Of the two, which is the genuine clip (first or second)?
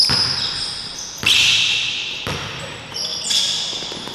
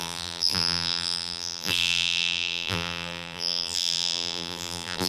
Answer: first